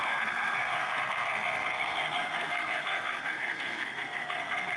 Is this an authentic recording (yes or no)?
no